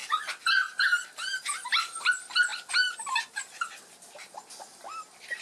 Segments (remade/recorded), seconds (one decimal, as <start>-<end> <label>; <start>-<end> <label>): 0.0-4.7 recorded; 4.7-5.4 remade